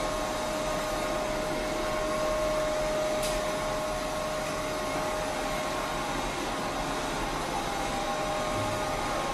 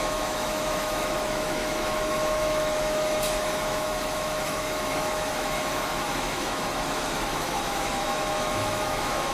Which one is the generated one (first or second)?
second